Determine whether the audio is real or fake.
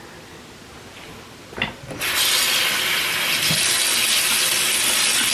real